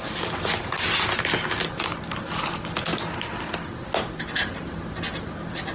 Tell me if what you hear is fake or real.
real